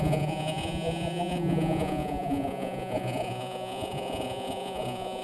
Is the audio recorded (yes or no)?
no